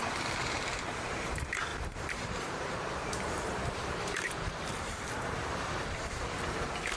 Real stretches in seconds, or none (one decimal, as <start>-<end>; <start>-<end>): none